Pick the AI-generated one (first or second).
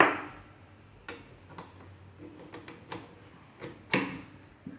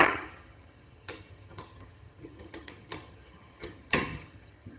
second